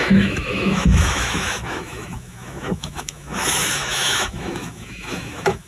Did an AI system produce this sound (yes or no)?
yes